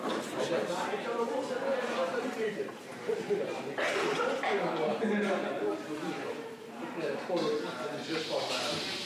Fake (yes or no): yes